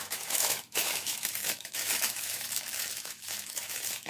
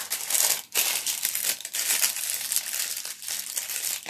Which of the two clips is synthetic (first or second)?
first